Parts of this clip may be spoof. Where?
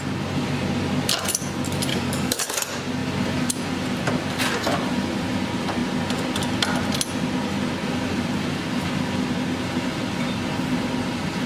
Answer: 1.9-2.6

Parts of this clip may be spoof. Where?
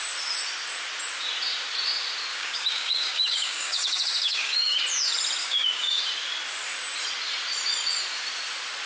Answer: 2.3-4.8; 5.4-6.0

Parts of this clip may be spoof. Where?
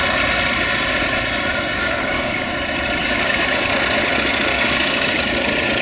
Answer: 1.8-2.5; 3.0-3.7; 4.5-5.2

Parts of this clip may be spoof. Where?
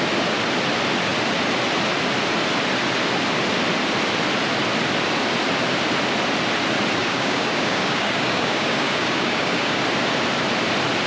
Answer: 7.0-9.8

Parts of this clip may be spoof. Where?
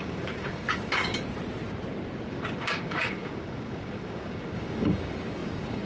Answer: 0.0-1.1; 2.3-5.9